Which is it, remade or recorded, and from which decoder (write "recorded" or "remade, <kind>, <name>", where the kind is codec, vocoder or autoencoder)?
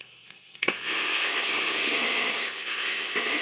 remade, codec, SNAC